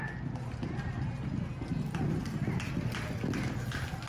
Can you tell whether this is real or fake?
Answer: real